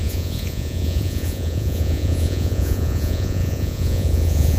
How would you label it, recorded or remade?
remade